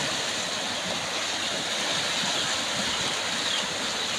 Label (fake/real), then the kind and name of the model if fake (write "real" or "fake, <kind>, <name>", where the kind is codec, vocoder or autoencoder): real